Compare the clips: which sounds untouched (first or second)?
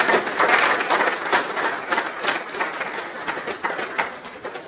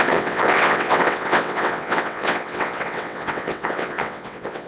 first